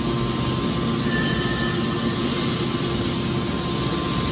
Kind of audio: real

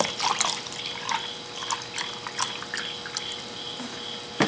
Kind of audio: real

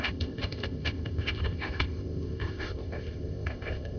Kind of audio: fake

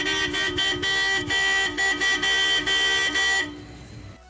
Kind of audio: real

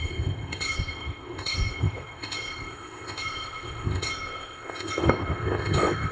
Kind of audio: fake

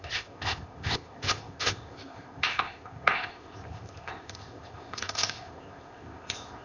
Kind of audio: fake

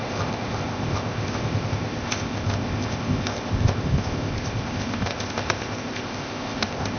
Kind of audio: fake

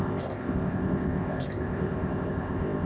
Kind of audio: fake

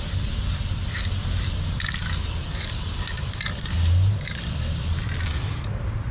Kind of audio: real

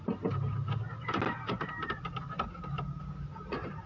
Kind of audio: real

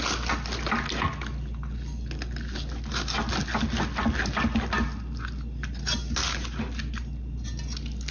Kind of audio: real